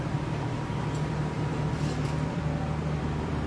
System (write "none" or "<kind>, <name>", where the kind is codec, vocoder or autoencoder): vocoder, BigVGAN v2